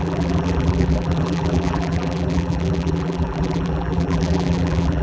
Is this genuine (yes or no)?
no